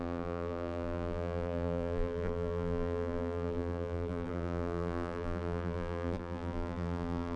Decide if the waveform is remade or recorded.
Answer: remade